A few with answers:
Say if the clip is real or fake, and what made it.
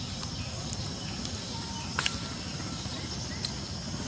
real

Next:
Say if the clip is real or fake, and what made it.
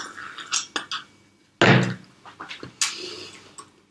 real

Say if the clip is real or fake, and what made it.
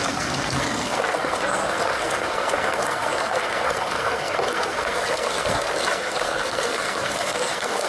fake, codec, SNAC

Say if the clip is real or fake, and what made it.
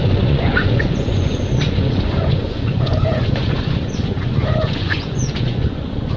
fake, vocoder, Vocos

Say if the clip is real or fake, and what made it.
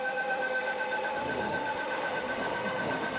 fake, autoencoder, DAC-VAE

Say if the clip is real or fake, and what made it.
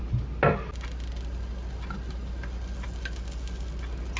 real